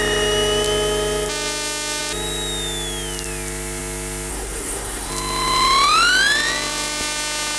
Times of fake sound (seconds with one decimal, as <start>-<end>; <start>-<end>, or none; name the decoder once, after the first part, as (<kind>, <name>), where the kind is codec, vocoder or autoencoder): 4.3-5.1 (codec, SNAC)